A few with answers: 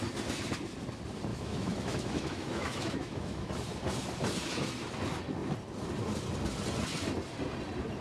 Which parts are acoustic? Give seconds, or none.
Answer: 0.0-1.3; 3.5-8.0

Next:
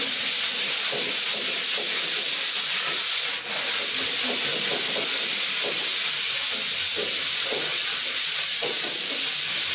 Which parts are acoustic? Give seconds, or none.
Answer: 0.0-7.7; 9.2-9.7